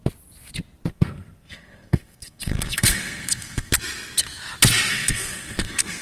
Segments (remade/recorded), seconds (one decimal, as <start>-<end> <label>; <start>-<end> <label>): 0.0-0.9 recorded; 0.9-3.7 remade; 3.7-4.9 recorded; 4.9-6.0 remade